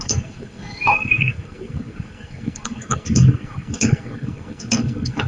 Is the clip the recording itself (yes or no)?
no